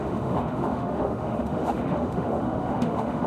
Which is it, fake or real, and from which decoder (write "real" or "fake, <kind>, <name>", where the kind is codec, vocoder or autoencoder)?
fake, autoencoder, DAC-VAE